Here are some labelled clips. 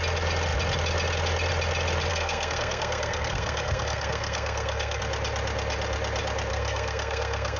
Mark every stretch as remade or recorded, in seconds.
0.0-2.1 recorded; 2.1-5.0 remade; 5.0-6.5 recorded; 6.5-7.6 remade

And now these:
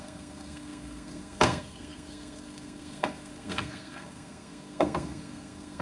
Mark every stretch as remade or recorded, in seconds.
0.0-5.8 remade

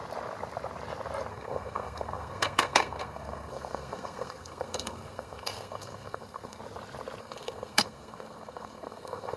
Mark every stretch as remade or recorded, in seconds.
0.0-1.3 recorded; 1.3-6.6 remade; 6.6-7.2 recorded; 7.2-9.4 remade

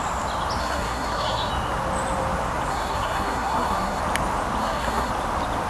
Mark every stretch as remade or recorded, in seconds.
0.0-0.6 recorded; 0.6-1.5 remade; 1.5-2.7 recorded; 2.7-4.0 remade; 4.0-4.6 recorded; 4.6-5.1 remade; 5.1-5.7 recorded

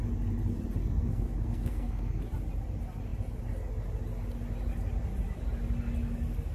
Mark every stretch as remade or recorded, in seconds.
0.0-0.8 recorded; 0.8-2.2 remade; 2.2-6.5 recorded

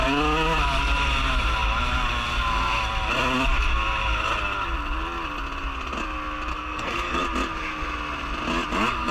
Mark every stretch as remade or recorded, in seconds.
0.0-6.5 recorded; 6.5-7.2 remade; 7.2-9.1 recorded

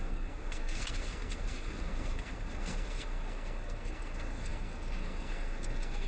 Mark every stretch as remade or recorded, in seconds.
0.0-6.1 remade

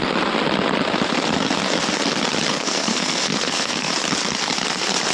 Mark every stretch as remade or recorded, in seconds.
0.0-2.5 recorded; 2.5-3.9 remade; 3.9-5.1 recorded